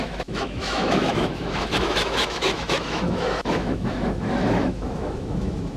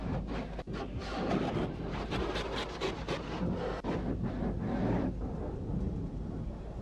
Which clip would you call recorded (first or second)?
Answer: second